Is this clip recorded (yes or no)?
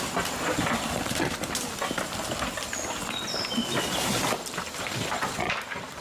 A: yes